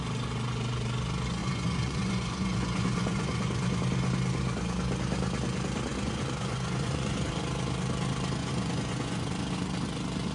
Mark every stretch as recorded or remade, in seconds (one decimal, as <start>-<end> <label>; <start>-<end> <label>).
0.0-1.4 recorded; 1.4-3.8 remade; 3.8-5.9 recorded; 5.9-7.3 remade; 7.3-8.4 recorded; 8.4-9.3 remade; 9.3-10.3 recorded